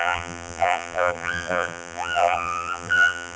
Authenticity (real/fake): fake